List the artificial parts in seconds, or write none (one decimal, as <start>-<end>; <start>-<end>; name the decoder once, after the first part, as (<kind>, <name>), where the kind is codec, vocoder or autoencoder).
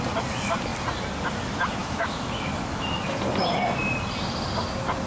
1.8-3.1 (autoencoder, DAC-VAE)